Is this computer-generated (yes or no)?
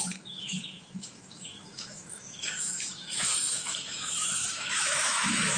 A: yes